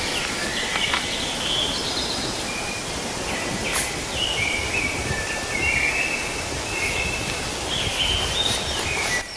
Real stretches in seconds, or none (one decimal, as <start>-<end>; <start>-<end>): 0.0-9.4